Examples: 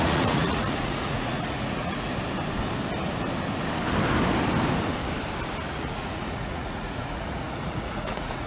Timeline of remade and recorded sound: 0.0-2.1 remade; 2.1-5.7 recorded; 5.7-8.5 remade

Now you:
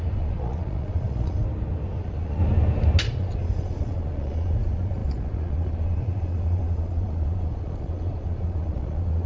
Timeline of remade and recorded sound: 0.0-1.4 remade; 1.4-2.0 recorded; 2.0-2.4 remade; 2.4-3.0 recorded; 3.0-9.3 remade

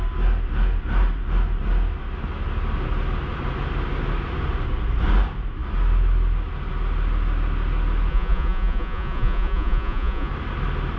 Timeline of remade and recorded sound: 0.0-8.1 recorded; 8.1-10.3 remade; 10.3-11.0 recorded

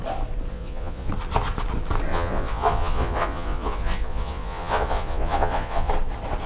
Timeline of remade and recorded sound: 0.0-0.5 recorded; 0.5-1.1 remade; 1.1-2.1 recorded; 2.1-5.9 remade; 5.9-6.5 recorded

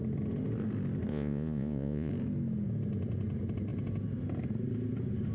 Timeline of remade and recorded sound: 0.0-1.1 recorded; 1.1-2.1 remade; 2.1-5.3 recorded

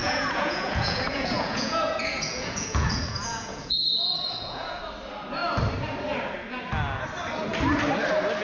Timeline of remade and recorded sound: 0.0-4.8 remade; 4.8-8.4 recorded